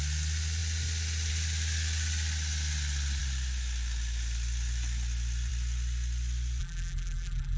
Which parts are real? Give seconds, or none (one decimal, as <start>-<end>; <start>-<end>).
0.0-6.6